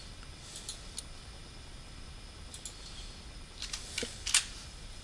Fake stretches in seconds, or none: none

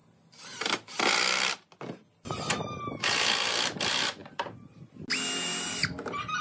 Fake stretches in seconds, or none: none